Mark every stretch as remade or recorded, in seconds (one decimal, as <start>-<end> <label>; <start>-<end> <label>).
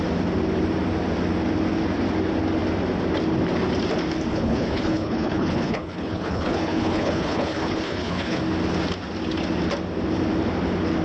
0.0-4.3 recorded; 4.3-8.4 remade; 8.4-11.0 recorded